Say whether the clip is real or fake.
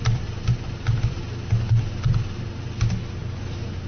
real